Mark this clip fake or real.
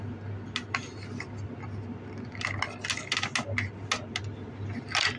real